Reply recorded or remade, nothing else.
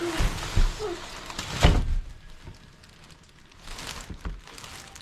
recorded